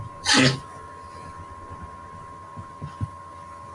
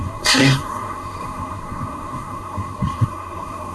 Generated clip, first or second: second